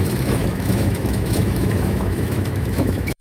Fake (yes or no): yes